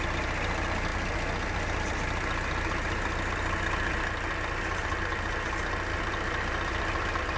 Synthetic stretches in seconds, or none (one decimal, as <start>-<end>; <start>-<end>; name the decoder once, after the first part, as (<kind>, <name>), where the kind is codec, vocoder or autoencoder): none